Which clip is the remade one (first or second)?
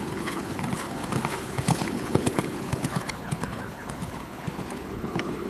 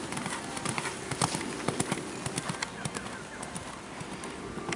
first